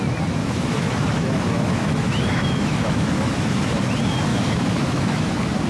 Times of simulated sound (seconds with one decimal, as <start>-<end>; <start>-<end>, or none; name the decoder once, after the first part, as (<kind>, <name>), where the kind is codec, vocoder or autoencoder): 0.4-3.8 (autoencoder, DAC-VAE); 4.3-5.3